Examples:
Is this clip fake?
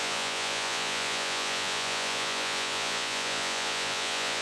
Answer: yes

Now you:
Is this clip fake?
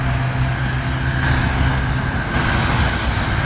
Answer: no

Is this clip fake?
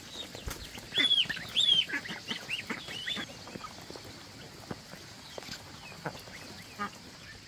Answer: no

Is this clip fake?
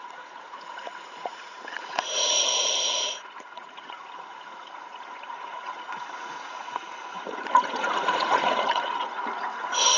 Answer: yes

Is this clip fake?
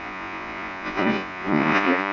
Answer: yes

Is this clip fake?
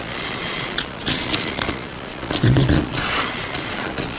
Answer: yes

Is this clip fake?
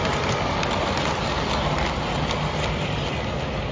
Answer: no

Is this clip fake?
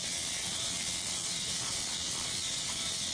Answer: yes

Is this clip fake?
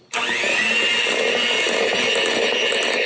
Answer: no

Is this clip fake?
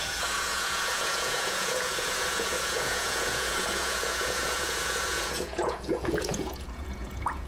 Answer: yes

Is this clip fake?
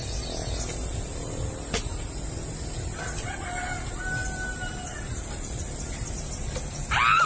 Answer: no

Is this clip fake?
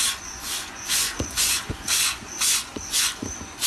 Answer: yes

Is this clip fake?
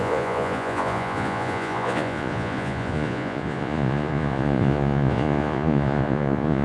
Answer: yes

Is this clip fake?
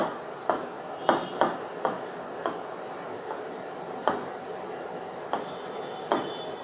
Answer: no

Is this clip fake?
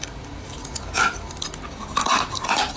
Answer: no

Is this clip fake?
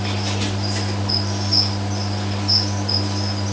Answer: no